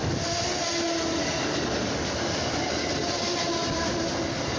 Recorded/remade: recorded